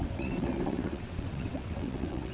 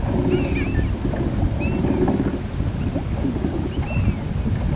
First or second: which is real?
second